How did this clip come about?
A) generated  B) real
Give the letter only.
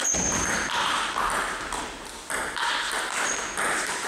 A